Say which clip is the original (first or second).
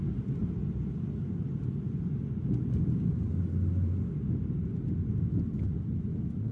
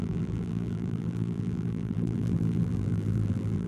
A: first